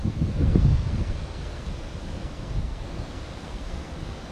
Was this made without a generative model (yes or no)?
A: no